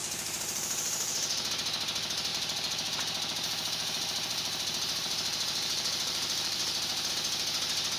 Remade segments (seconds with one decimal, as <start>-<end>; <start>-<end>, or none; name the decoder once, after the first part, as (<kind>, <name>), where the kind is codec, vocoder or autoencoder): 0.0-1.5 (vocoder, BigVGAN v2); 2.3-7.1